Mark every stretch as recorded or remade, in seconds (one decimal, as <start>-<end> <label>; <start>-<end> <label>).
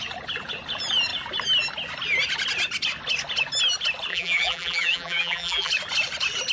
0.0-4.1 recorded; 4.1-5.7 remade; 5.7-6.5 recorded